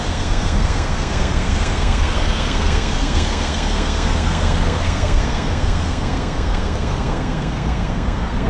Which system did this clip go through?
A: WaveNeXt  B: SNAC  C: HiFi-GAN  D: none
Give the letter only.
B